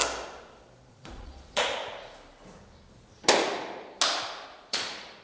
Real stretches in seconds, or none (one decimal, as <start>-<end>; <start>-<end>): 0.0-0.9; 1.8-4.7